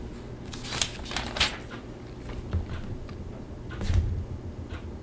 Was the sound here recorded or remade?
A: recorded